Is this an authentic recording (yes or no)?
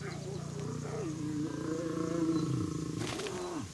yes